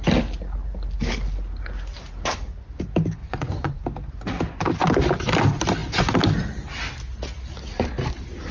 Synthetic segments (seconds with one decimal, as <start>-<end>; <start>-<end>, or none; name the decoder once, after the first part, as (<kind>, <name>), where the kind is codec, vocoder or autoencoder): 3.2-3.8 (vocoder, Vocos)